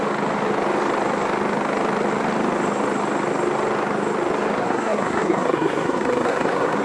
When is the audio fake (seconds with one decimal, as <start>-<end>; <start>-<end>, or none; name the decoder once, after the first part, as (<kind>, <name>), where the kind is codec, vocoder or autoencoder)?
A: 4.6-6.8 (codec, SNAC)